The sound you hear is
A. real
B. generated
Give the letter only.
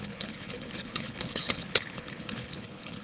B